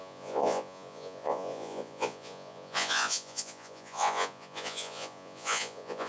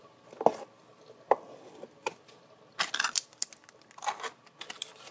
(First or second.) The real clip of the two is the second